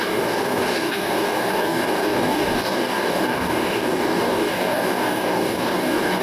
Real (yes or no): no